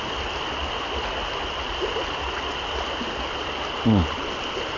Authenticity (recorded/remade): recorded